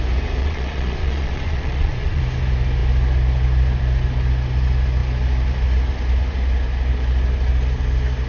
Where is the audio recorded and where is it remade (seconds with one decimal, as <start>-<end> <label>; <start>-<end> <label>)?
0.0-0.4 recorded; 0.4-2.2 remade; 2.2-8.3 recorded